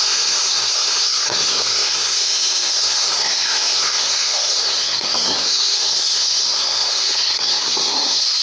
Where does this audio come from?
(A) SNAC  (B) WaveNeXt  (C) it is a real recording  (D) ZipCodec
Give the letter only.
A